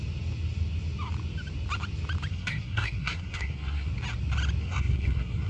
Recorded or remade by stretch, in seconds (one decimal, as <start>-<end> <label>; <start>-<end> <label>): 0.0-2.3 recorded; 2.3-3.9 remade; 3.9-4.6 recorded; 4.6-5.5 remade